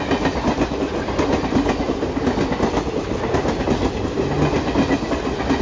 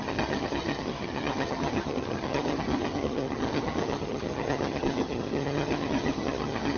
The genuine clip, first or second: first